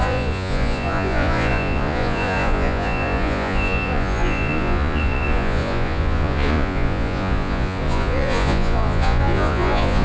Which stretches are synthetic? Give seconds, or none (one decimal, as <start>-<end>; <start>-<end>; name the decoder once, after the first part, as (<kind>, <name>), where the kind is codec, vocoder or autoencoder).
0.0-10.0 (vocoder, Vocos)